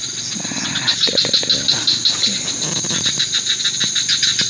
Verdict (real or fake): real